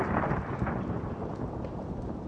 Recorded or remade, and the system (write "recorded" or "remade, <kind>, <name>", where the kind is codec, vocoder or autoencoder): recorded